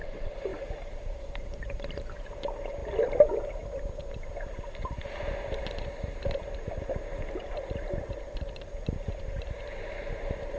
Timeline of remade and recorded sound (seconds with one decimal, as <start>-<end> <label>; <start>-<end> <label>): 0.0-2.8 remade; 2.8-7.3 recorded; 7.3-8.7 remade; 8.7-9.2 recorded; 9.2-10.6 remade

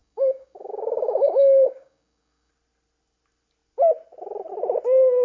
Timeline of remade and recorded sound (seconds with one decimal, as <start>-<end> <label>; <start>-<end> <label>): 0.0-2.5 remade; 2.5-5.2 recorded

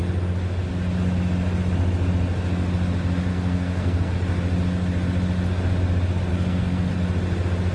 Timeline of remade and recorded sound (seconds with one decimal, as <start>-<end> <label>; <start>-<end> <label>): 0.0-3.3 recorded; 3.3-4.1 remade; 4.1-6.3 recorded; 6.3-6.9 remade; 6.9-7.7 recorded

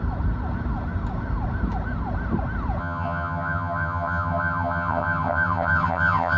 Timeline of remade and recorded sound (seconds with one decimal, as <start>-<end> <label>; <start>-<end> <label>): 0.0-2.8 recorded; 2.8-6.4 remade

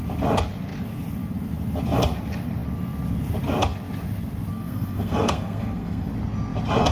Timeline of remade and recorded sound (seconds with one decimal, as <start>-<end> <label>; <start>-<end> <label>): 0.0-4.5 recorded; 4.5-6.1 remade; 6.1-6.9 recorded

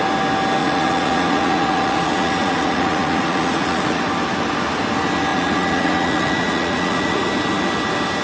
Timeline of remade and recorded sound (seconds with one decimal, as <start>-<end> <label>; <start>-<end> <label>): 0.0-0.6 recorded; 0.6-4.0 remade; 4.0-5.3 recorded; 5.3-7.3 remade; 7.3-8.2 recorded

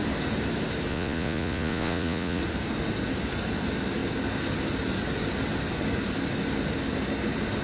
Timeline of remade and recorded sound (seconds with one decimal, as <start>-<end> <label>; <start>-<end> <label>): 0.0-0.9 recorded; 0.9-2.4 remade; 2.4-7.6 recorded

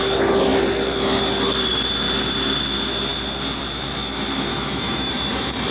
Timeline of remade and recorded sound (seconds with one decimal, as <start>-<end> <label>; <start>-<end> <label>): 0.0-4.5 recorded; 4.5-5.1 remade; 5.1-5.7 recorded